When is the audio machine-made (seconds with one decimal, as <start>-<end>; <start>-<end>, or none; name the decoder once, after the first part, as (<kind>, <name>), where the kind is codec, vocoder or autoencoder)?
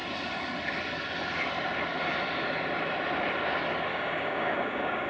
3.9-5.1 (codec, DAC)